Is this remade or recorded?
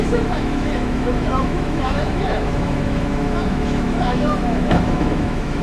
remade